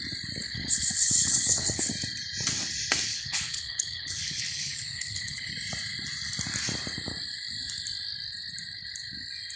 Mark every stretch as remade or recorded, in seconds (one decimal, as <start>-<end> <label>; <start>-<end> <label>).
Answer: 0.0-0.4 recorded; 0.4-1.9 remade; 1.9-3.1 recorded; 3.1-5.5 remade; 5.5-9.6 recorded